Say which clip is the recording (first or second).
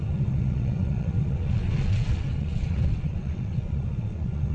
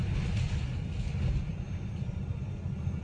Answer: second